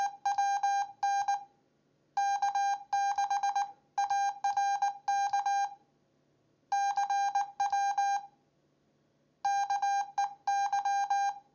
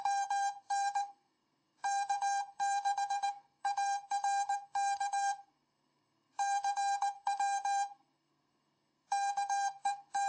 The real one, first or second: first